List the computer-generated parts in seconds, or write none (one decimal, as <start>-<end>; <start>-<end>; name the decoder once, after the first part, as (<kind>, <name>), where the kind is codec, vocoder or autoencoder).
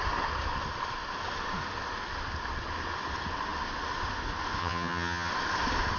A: 4.6-5.3 (vocoder, HiFi-GAN)